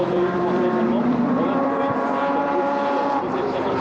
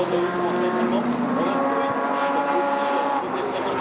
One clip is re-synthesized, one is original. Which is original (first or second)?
second